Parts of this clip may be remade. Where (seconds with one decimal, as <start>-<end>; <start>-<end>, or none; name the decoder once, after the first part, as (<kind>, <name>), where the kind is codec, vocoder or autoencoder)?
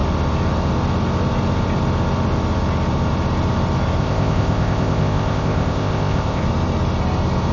4.0-6.4 (codec, ZipCodec)